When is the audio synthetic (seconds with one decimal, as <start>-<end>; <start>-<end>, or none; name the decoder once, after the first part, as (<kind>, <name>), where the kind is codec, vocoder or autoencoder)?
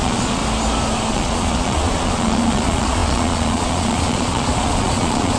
0.0-0.4 (vocoder, Vocos); 1.1-5.4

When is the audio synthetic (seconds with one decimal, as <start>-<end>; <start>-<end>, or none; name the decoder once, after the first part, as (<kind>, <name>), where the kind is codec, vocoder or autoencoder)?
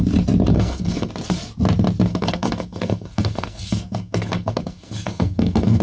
0.5-1.1 (codec, SNAC); 2.1-5.8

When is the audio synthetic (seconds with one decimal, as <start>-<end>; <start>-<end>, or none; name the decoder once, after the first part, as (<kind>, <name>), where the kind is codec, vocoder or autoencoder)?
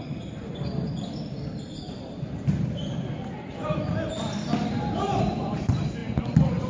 none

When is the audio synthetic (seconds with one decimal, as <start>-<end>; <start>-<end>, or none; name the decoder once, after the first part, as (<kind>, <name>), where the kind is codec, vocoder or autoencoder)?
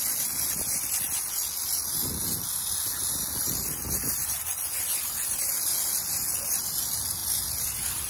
none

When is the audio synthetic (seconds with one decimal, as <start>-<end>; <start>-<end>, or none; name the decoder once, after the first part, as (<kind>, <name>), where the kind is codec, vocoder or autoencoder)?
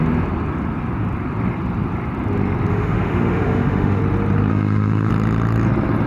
2.7-4.0 (autoencoder, DAC-VAE); 4.5-5.1